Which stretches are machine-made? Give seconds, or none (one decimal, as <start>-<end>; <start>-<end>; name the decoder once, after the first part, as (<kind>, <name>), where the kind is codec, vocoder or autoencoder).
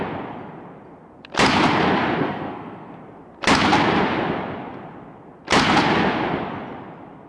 2.2-2.9 (codec, SNAC)